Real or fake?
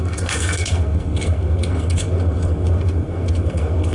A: fake